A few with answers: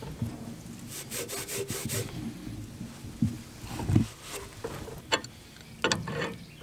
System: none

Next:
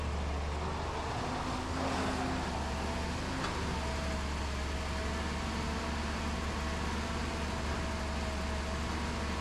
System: none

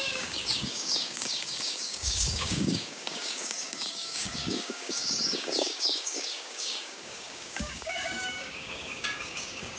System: codec, DAC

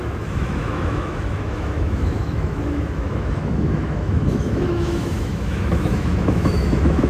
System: autoencoder, DAC-VAE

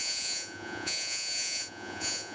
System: vocoder, Vocos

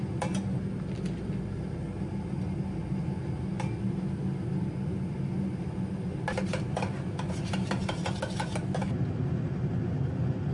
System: none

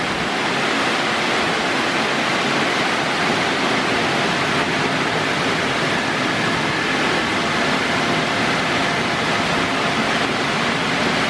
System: none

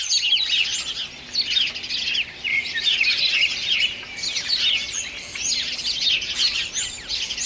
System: none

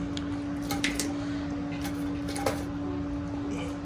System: none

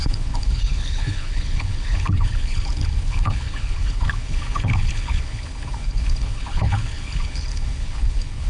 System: codec, HILCodec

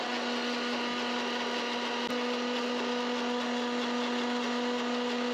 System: none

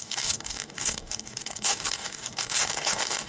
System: codec, DAC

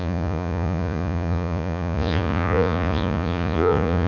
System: vocoder, Vocos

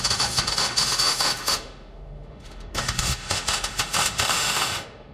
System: autoencoder, DAC-VAE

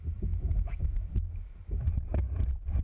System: none